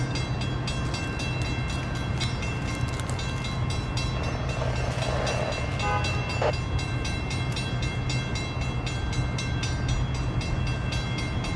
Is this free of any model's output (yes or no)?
yes